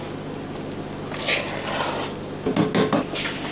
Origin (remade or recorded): recorded